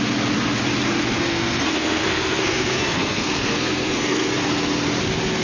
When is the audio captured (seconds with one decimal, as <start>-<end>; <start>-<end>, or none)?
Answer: 0.0-1.1; 4.3-5.4